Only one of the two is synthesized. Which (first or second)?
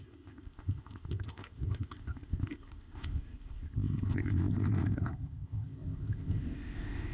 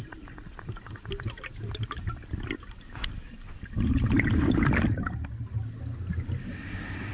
first